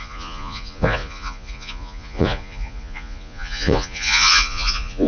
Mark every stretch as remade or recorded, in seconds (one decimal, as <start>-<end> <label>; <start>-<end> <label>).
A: 0.0-5.1 remade

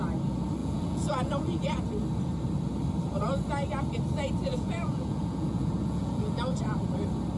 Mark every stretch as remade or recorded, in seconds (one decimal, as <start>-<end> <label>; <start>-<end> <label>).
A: 0.0-0.6 recorded; 0.6-1.8 remade; 1.8-4.5 recorded; 4.5-6.6 remade; 6.6-7.4 recorded

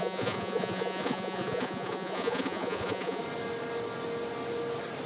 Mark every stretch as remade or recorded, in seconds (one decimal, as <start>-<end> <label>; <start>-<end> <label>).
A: 0.0-3.2 remade; 3.2-5.1 recorded

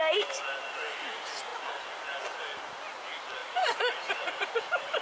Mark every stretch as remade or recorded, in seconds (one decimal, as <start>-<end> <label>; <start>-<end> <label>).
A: 0.0-3.4 recorded; 3.4-5.0 remade

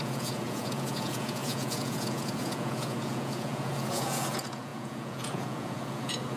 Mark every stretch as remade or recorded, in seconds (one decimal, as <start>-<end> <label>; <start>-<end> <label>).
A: 0.0-6.4 remade

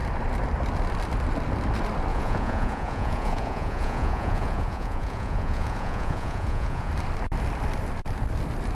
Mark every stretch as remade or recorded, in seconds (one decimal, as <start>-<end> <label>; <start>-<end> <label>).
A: 0.0-2.1 recorded; 2.1-6.9 remade; 6.9-8.7 recorded

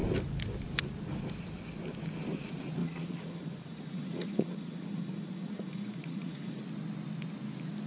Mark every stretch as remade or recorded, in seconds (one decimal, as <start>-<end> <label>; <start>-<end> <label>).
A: 0.0-2.8 recorded; 2.8-6.6 remade; 6.6-7.9 recorded